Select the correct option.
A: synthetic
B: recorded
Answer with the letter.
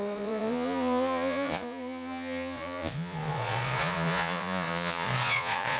A